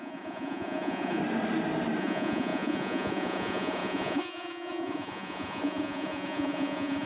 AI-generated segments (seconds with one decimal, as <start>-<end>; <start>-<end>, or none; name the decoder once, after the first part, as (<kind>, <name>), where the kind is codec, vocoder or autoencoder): 0.0-1.2 (vocoder, Vocos); 2.0-7.1